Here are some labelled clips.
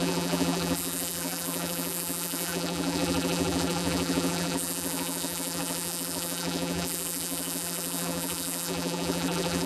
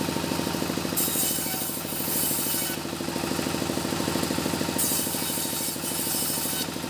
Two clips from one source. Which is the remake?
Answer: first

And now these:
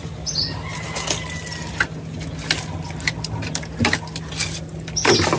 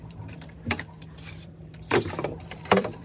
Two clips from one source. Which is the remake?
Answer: second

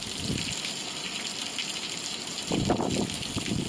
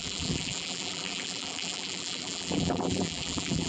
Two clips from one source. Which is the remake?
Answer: second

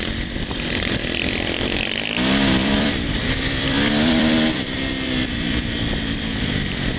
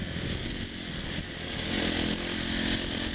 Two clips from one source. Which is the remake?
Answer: first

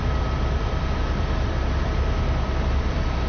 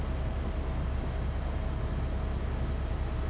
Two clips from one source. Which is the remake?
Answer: first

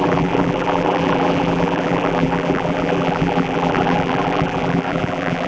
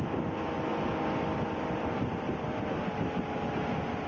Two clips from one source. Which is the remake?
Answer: first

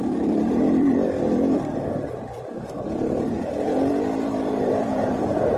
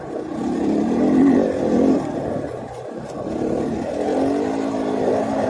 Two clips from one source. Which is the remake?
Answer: first